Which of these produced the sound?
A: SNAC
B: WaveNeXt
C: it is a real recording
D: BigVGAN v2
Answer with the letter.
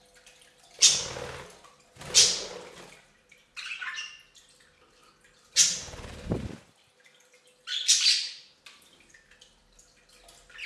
C